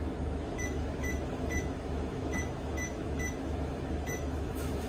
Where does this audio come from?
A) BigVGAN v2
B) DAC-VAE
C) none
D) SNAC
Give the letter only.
B